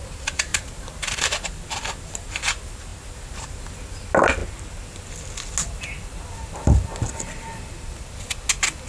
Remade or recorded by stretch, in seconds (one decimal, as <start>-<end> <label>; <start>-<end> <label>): 0.0-0.5 recorded; 0.5-1.2 remade; 1.2-8.9 recorded